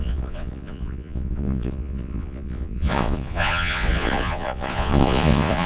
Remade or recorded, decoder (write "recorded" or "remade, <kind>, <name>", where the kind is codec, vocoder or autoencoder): remade, vocoder, Vocos